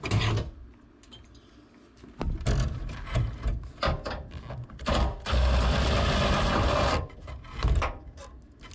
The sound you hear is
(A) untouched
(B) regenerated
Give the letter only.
A